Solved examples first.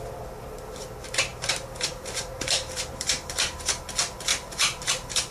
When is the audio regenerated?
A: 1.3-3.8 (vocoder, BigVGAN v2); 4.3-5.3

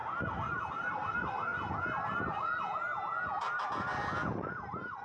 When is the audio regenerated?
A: 0.7-1.5 (vocoder, BigVGAN v2); 4.5-5.0

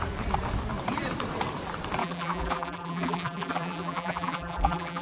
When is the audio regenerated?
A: 2.0-5.0 (vocoder, BigVGAN v2)

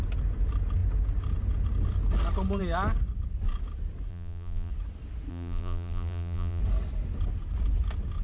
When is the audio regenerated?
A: 4.1-4.7 (vocoder, BigVGAN v2); 5.3-6.6

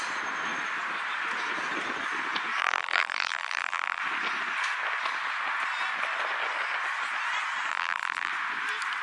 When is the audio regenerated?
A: 2.6-4.0 (vocoder, BigVGAN v2); 7.7-8.3

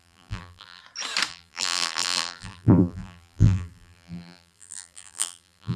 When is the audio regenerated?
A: 0.0-0.8 (vocoder, BigVGAN v2); 1.3-5.8

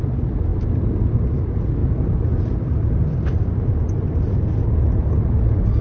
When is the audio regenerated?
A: 1.8-5.3 (vocoder, BigVGAN v2)

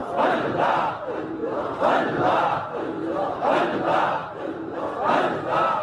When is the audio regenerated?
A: 1.4-4.8 (vocoder, BigVGAN v2)